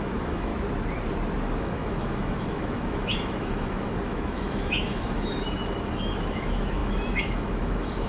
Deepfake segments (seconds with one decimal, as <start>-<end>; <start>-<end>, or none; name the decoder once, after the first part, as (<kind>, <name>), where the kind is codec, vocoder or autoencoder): 0.0-0.5 (autoencoder, DAC-VAE); 1.6-8.1